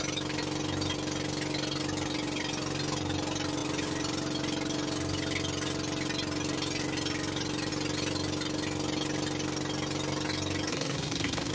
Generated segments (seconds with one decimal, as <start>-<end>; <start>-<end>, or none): 10.7-11.5